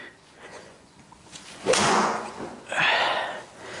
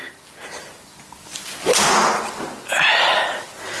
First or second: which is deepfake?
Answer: first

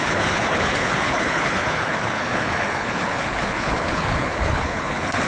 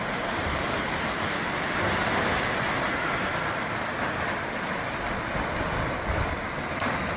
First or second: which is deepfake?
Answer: first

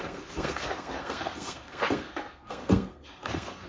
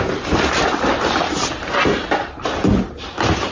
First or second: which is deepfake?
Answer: first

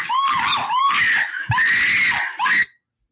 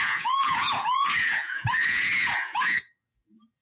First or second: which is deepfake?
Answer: second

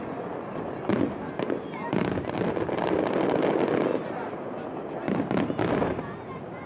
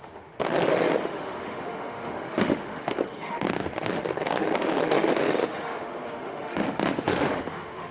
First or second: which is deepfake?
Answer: second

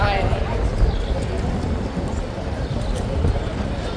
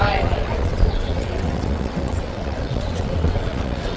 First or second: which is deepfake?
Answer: second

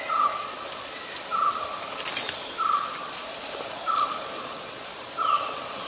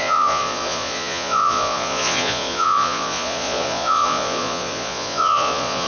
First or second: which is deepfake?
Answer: second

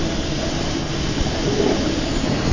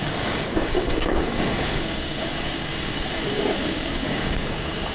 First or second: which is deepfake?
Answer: second